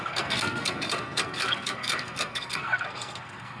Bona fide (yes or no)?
no